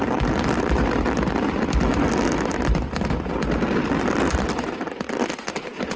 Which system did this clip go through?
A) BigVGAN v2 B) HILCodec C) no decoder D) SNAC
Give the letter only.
C